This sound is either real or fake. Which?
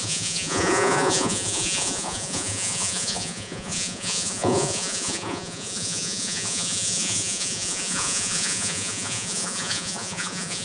fake